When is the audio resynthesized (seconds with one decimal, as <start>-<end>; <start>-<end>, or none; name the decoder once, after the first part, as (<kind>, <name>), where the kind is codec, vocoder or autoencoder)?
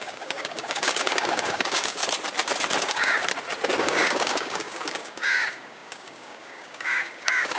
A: 0.0-2.0 (codec, DAC); 2.8-3.2; 3.8-7.6